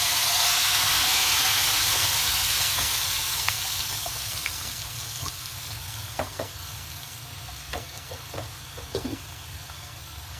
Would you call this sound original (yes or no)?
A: no